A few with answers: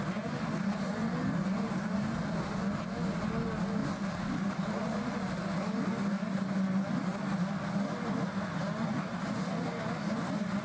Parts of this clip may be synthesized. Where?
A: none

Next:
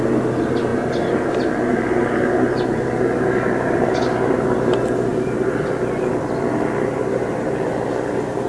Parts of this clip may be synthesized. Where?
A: none